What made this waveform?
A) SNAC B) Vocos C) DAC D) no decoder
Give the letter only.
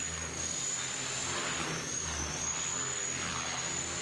D